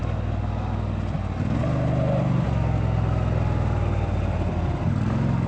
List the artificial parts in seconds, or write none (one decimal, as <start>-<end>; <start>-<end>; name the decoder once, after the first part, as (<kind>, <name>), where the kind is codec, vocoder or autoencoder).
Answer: none